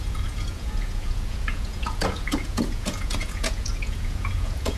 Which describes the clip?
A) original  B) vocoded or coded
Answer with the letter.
B